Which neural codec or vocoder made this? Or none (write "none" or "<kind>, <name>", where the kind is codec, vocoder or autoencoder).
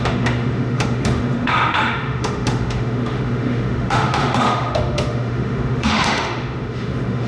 autoencoder, DAC-VAE